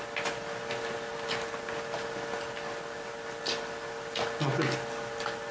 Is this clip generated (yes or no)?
no